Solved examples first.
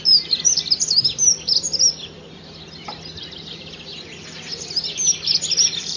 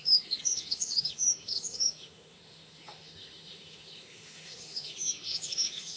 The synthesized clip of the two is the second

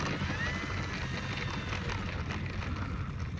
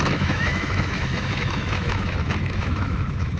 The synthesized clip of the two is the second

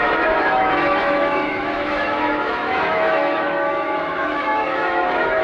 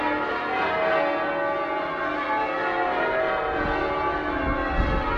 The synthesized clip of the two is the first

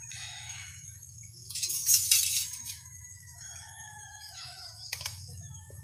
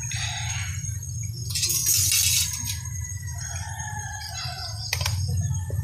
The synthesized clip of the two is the first